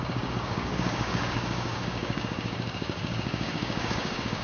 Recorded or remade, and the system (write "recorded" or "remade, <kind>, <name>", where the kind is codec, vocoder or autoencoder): remade, codec, DAC